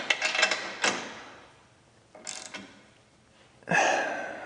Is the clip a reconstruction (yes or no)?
no